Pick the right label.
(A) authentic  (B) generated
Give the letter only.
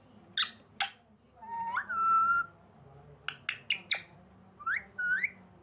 A